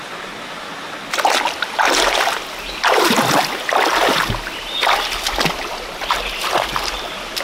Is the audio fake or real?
real